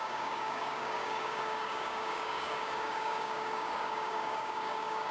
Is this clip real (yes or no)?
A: no